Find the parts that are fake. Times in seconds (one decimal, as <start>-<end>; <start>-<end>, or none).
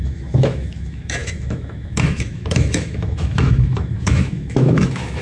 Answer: 0.0-5.2